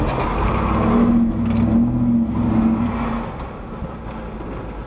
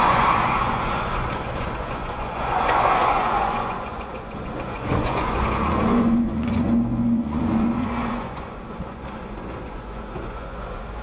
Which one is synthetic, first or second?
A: second